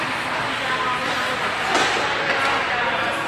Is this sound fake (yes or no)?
no